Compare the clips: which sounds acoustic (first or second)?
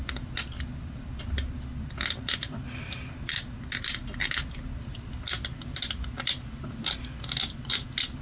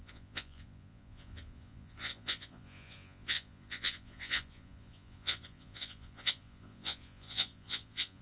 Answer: first